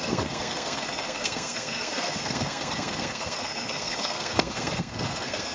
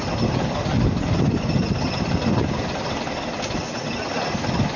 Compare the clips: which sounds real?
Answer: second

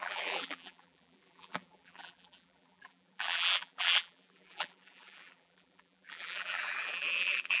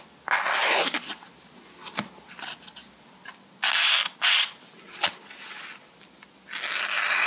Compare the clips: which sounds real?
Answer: second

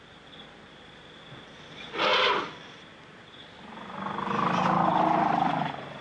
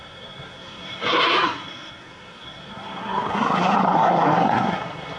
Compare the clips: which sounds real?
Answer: first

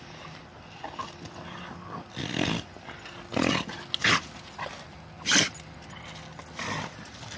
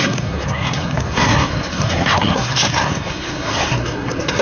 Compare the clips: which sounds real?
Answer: first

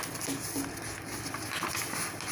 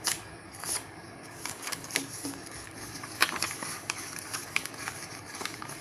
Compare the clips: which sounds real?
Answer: first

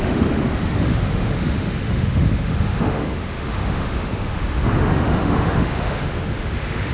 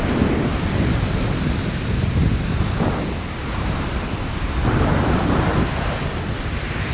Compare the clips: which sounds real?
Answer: second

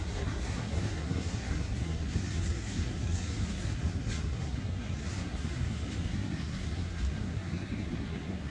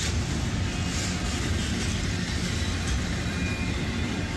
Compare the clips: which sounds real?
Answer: second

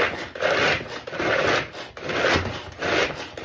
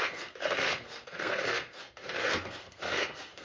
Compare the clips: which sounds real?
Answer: first